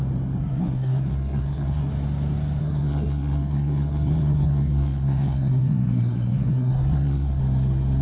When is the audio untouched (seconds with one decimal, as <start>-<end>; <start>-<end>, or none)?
0.0-0.4; 1.9-2.6; 7.4-8.0

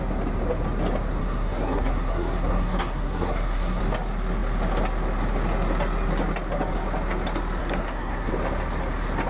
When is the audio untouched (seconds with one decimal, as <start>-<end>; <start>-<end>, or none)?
0.0-1.2; 3.8-7.6; 8.3-9.3

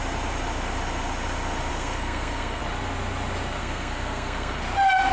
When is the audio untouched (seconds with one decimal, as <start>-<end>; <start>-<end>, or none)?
0.0-1.7; 2.6-3.6; 4.6-5.1

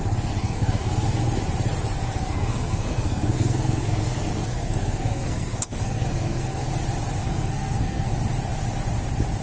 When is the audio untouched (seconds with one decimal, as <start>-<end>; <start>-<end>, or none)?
0.0-0.4; 1.2-2.1; 6.7-7.2; 8.1-9.4

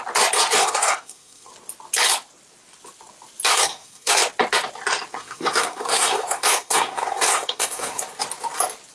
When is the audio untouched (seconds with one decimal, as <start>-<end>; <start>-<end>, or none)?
0.0-0.6; 1.5-3.5; 4.2-5.1; 8.0-8.9

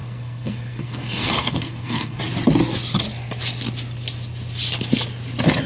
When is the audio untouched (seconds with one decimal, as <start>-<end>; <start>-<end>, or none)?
2.2-5.7

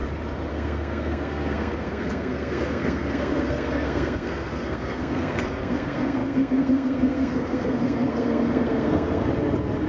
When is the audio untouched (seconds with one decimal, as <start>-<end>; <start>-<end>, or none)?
0.0-0.5; 9.3-9.9

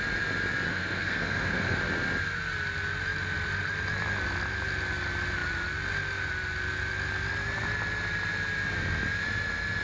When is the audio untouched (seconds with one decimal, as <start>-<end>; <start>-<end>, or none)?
0.0-0.7; 1.8-9.8